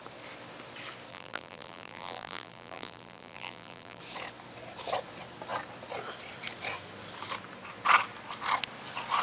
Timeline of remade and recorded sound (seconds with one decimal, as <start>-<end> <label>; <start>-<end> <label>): 0.0-1.1 recorded; 1.1-4.0 remade; 4.0-9.2 recorded